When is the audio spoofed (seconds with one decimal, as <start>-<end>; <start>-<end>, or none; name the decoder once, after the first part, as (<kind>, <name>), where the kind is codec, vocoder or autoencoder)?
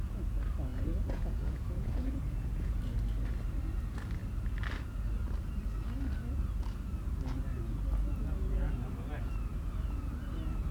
0.7-2.8 (vocoder, Vocos)